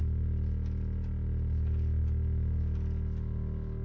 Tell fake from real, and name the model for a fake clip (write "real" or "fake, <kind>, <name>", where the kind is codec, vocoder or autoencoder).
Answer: real